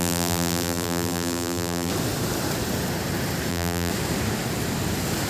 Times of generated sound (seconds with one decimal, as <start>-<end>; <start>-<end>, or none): 0.0-1.9; 3.5-3.9